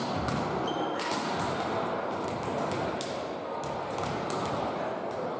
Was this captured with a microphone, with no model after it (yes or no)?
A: yes